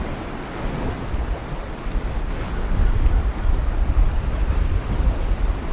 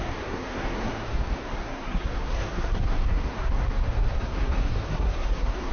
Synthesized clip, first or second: second